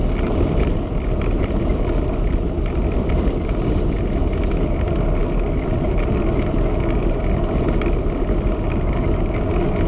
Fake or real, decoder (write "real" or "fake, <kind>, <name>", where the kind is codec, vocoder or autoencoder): real